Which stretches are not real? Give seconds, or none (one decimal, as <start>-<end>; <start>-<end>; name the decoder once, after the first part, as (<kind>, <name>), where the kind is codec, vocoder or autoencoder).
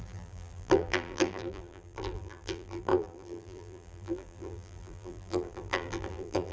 0.0-6.5 (vocoder, BigVGAN v2)